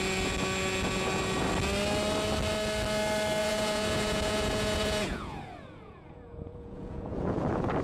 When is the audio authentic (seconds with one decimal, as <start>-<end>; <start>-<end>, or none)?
0.0-3.4